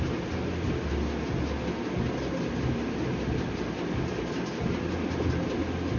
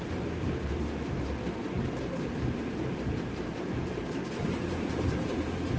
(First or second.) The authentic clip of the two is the first